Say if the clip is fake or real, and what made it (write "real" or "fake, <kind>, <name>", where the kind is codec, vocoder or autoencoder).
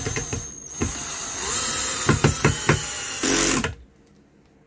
real